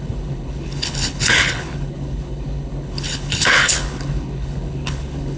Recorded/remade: remade